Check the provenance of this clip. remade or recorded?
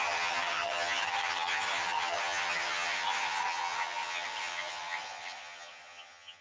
remade